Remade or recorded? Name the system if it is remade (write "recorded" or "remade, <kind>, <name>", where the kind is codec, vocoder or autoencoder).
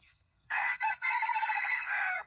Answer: remade, codec, SNAC